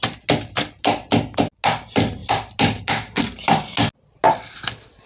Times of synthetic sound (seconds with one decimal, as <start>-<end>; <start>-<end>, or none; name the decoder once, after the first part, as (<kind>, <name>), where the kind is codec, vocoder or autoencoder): none